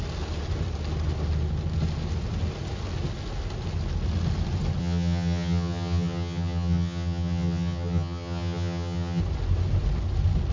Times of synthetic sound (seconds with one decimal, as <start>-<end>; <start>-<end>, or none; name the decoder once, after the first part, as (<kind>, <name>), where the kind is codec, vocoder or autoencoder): 4.8-9.2 (vocoder, HiFi-GAN)